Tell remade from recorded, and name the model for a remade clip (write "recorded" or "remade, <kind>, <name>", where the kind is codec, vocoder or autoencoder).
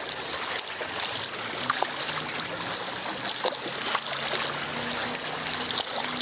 recorded